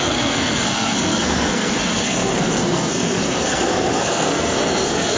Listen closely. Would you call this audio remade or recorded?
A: remade